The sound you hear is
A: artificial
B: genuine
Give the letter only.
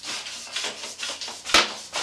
B